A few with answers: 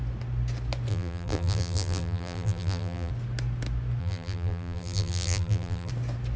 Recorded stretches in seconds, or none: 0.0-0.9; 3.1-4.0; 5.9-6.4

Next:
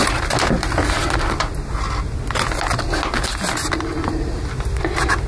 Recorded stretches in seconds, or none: 0.0-5.3